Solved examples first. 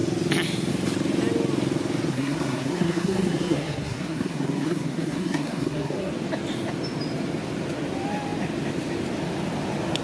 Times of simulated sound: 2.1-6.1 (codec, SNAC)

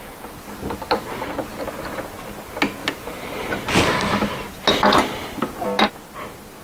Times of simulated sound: 2.8-3.5 (vocoder, BigVGAN v2)